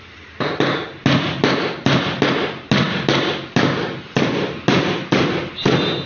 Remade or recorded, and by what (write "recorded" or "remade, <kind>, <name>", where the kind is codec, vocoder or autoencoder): recorded